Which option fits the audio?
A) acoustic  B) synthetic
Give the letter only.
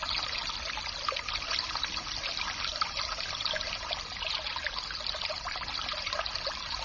A